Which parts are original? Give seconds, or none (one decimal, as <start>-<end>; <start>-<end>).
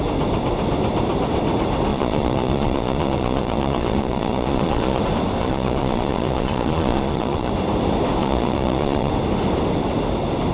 0.0-1.9; 5.0-5.4; 7.5-8.2; 9.1-10.5